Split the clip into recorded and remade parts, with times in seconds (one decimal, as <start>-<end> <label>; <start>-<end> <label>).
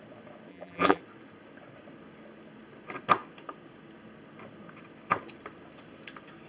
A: 0.0-0.5 recorded; 0.5-1.0 remade; 1.0-6.5 recorded